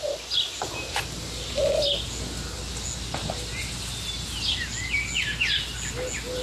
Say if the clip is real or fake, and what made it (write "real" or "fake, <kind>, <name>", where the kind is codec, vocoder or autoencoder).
real